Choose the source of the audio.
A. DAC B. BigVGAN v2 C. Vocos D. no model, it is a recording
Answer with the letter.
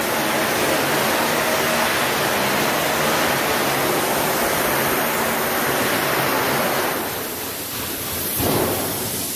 D